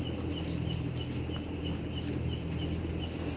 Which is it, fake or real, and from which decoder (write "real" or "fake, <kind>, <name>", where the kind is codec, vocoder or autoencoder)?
real